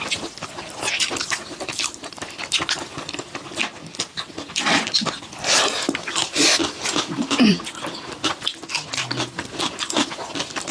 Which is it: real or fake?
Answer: real